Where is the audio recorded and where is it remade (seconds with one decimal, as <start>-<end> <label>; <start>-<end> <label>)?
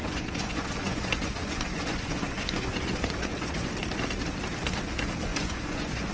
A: 0.0-3.7 remade; 3.7-5.3 recorded; 5.3-6.1 remade